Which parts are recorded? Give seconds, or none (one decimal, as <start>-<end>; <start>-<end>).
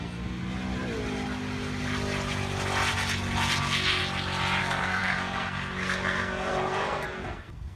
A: 0.4-3.6; 4.0-4.6